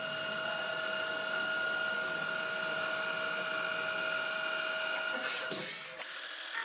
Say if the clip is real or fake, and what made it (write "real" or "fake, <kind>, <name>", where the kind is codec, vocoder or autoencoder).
real